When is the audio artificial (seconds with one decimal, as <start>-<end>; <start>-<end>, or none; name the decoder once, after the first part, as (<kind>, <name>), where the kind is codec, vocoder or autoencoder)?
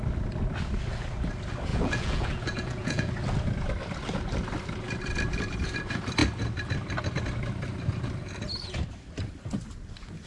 1.7-3.1 (vocoder, Vocos)